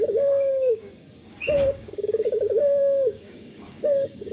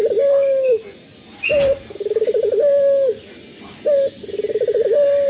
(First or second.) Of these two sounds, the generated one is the first